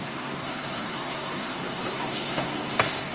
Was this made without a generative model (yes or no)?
no